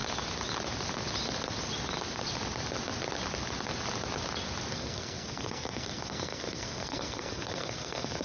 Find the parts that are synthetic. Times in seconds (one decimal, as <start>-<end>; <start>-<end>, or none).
4.7-8.2